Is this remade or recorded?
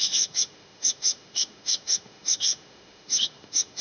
remade